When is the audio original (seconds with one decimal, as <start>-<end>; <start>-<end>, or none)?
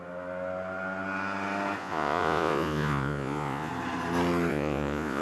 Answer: 0.0-1.8; 3.7-4.5